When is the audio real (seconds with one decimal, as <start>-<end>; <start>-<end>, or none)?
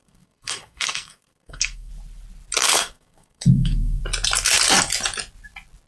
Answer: 1.9-2.6; 4.0-5.9